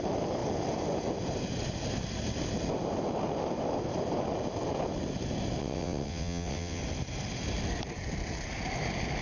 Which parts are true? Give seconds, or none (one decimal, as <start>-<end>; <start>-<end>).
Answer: 0.0-5.6; 6.8-9.2

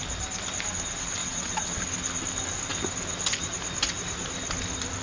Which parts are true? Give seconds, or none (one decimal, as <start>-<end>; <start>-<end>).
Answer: 0.0-1.2; 1.8-5.0

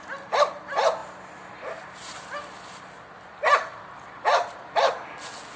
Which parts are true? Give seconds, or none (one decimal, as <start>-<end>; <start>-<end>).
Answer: 0.0-5.6

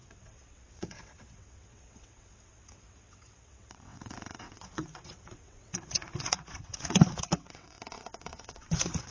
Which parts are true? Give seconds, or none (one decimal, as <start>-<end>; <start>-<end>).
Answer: none

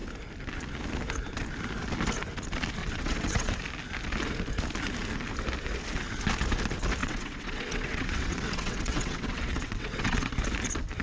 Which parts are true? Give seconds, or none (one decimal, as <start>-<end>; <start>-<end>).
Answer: 0.0-2.8; 3.6-7.0; 10.3-11.0

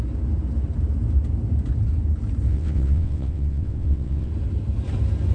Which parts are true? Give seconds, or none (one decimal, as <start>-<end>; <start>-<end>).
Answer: 0.0-2.5; 4.3-5.3

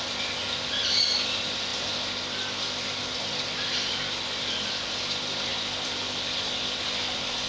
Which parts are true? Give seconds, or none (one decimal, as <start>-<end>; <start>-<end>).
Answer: 0.0-7.5